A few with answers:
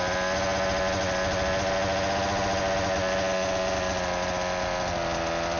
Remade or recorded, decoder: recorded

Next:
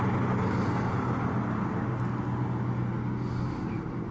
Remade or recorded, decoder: recorded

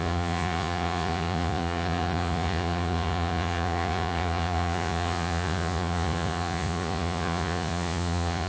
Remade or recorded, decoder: remade, vocoder, Vocos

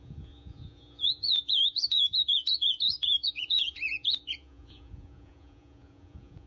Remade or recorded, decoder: remade, vocoder, Vocos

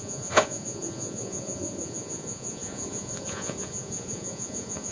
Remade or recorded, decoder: remade, vocoder, Vocos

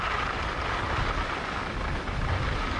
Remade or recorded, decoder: recorded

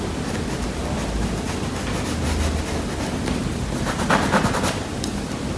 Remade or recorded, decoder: recorded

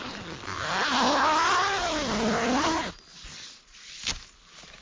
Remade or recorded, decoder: recorded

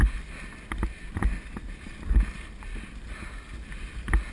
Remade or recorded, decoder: recorded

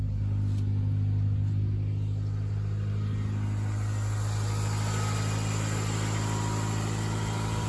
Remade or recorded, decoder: recorded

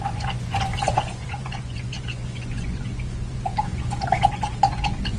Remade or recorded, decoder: remade, vocoder, Vocos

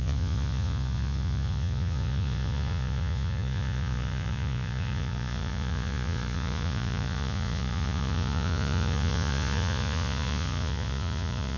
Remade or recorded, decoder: remade, vocoder, Vocos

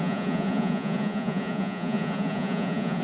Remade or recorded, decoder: remade, vocoder, Vocos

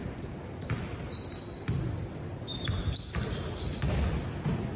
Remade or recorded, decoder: recorded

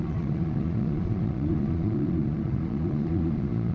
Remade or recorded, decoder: remade, vocoder, Vocos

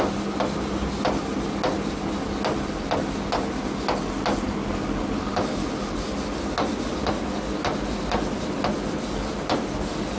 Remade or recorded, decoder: recorded